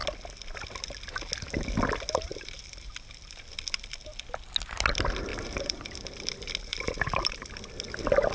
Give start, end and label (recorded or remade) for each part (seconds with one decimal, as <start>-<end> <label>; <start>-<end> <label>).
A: 0.0-2.3 recorded; 2.3-2.9 remade; 2.9-5.3 recorded; 5.3-6.0 remade; 6.0-6.7 recorded; 6.7-7.5 remade; 7.5-8.3 recorded